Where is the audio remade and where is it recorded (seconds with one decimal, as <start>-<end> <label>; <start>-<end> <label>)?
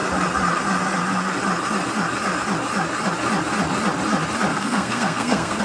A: 0.0-4.5 recorded; 4.5-5.6 remade